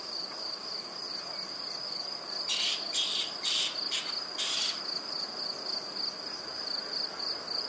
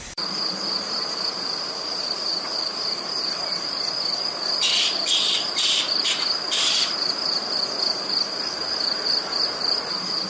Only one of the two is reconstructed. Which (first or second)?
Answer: second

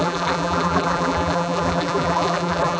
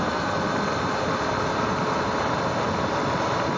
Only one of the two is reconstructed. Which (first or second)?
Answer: first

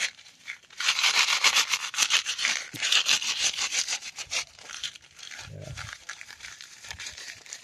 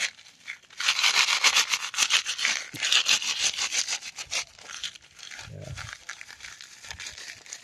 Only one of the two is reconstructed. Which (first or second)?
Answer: first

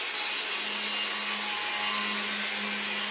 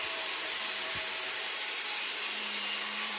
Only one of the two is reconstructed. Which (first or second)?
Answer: second